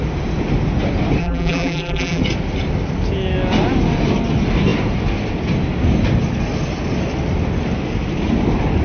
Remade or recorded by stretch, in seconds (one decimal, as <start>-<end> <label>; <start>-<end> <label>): 0.0-1.2 recorded; 1.2-2.2 remade; 2.2-8.8 recorded